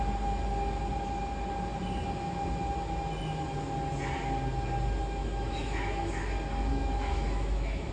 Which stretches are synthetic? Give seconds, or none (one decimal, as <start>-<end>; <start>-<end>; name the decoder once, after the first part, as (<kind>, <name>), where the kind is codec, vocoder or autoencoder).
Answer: 5.2-6.1 (autoencoder, DAC-VAE); 6.7-7.9

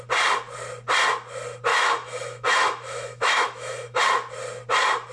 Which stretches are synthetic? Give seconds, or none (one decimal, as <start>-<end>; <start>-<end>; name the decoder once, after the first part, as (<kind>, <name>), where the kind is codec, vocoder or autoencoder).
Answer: 1.7-4.0 (autoencoder, DAC-VAE)

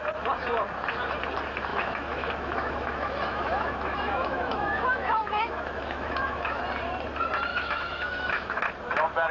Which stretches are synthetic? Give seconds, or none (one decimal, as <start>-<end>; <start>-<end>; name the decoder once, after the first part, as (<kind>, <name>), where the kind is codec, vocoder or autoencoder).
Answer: 1.7-6.6 (autoencoder, DAC-VAE); 7.5-8.6